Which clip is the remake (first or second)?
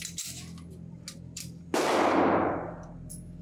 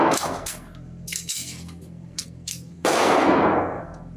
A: second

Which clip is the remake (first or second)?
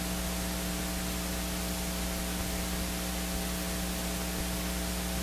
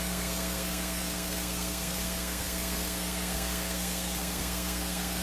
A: second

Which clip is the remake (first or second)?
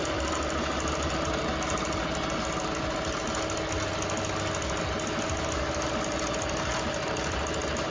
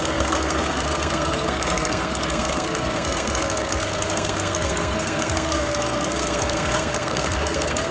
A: second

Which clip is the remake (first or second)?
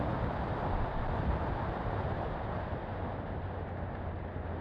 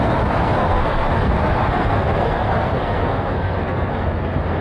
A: second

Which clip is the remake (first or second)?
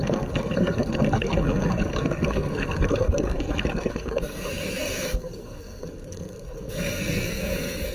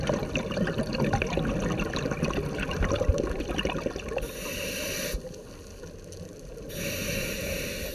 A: first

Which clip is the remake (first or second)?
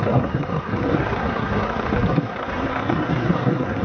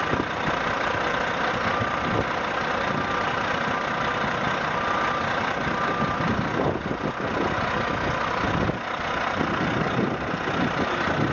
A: first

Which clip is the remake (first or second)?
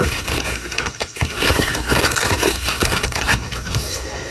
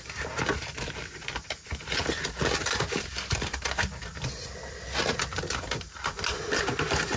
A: first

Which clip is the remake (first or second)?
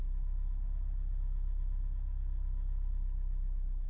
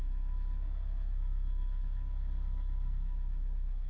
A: second